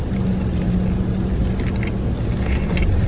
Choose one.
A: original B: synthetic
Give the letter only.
A